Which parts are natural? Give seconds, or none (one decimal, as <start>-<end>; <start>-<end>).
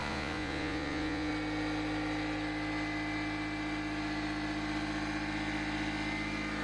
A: 1.3-6.6